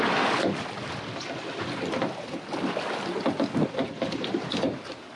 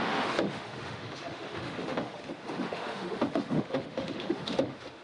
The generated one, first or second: second